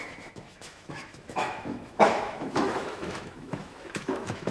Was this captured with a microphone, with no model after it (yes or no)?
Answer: no